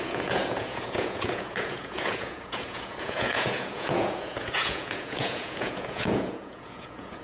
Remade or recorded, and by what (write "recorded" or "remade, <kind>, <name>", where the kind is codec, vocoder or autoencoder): remade, vocoder, Vocos